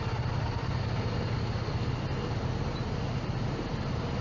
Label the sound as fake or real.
real